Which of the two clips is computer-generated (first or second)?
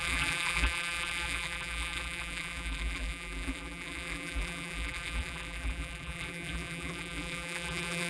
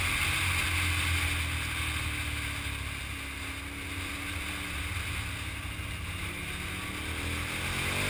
first